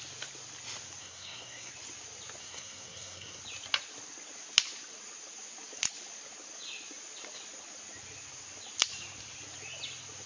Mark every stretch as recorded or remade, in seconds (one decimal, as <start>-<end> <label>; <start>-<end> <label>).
0.0-1.0 recorded; 1.0-1.7 remade; 1.7-2.4 recorded; 2.4-3.4 remade; 3.4-10.3 recorded